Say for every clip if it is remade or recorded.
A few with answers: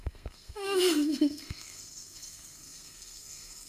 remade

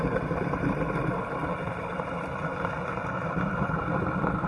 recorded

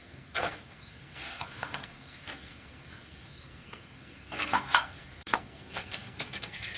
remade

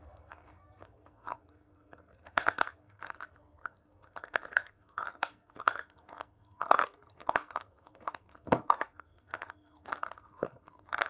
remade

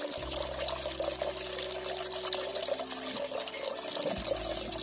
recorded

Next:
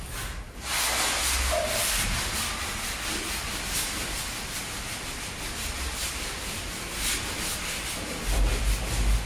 recorded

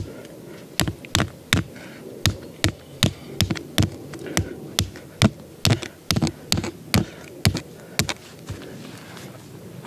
recorded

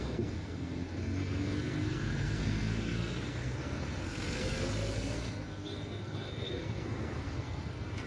remade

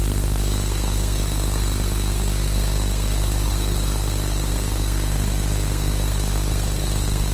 remade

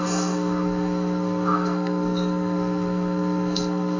remade